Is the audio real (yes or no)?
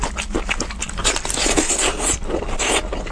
yes